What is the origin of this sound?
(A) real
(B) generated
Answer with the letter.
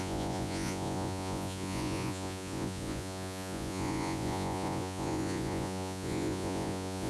B